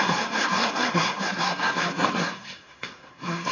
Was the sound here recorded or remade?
remade